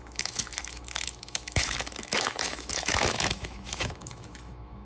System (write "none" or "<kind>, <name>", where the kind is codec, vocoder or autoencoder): autoencoder, DAC-VAE